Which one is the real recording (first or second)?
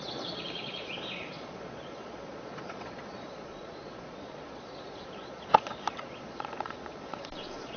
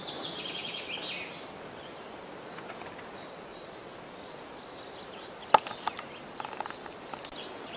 second